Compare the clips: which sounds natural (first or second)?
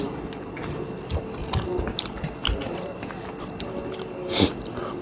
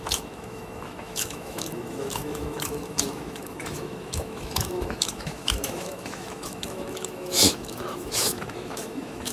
first